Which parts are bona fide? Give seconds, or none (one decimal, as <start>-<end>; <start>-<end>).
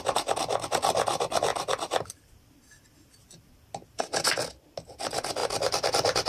0.0-6.3